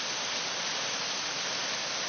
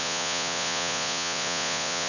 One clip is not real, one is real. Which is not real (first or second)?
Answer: second